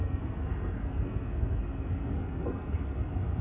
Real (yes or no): no